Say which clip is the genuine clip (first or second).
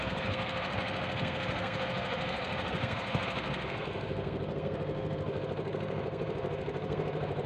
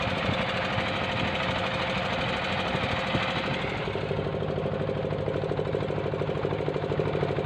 second